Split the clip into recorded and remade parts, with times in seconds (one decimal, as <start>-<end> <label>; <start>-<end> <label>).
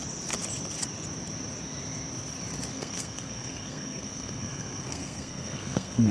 0.0-2.7 recorded; 2.7-6.1 remade